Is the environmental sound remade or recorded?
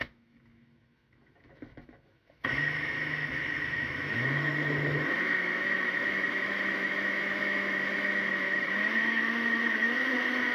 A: remade